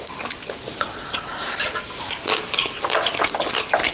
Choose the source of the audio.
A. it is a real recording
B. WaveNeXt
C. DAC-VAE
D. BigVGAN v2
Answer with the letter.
A